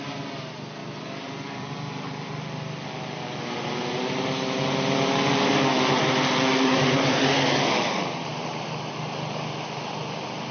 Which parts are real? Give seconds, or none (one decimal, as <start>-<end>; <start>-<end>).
0.0-10.5